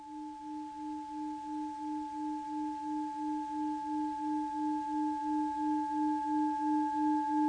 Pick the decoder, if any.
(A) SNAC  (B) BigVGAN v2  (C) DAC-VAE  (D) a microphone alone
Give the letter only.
D